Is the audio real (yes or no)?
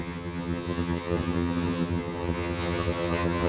no